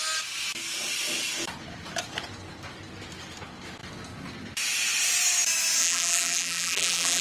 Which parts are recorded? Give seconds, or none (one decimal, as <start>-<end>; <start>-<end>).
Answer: 0.0-5.8